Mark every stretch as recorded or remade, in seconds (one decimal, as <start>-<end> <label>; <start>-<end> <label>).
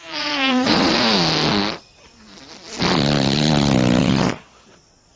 0.0-0.9 remade; 0.9-4.0 recorded; 4.0-5.2 remade